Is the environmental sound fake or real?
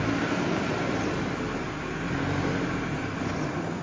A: real